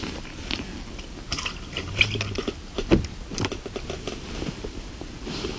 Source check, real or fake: real